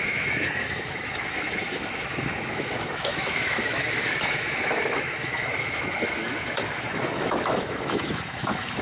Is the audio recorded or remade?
remade